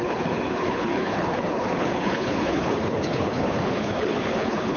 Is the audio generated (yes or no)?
yes